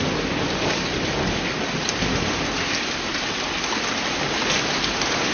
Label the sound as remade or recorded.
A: remade